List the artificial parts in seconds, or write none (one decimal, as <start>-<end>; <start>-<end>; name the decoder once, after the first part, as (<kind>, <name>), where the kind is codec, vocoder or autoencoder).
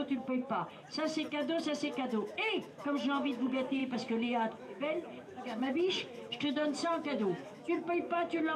0.0-0.4 (autoencoder, DAC-VAE); 1.6-8.6